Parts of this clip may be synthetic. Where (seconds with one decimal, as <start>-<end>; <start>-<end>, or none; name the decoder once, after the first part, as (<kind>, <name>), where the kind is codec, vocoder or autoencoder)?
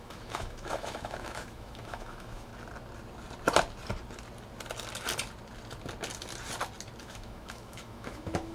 0.0-2.5 (autoencoder, DAC-VAE); 7.0-8.5